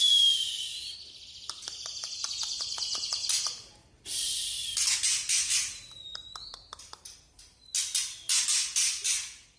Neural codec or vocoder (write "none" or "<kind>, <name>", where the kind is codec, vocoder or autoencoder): none